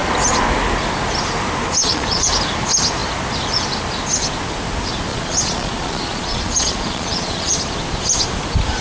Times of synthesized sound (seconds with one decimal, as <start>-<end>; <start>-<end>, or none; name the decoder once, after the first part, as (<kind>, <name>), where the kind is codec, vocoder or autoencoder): 1.8-2.3 (vocoder, Vocos); 5.1-7.6